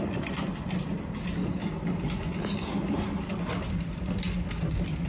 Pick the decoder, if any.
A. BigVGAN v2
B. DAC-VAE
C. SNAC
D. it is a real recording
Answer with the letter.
D